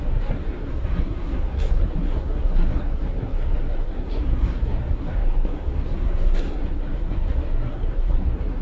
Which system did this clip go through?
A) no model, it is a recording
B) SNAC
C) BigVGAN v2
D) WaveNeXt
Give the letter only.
B